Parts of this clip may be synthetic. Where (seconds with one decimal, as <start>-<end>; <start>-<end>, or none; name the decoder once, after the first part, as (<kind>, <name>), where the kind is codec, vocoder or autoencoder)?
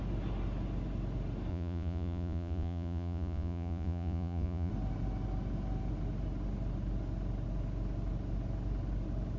1.5-4.7 (vocoder, Vocos)